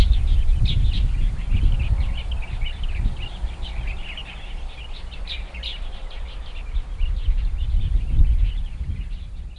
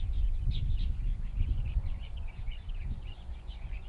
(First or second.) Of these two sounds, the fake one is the second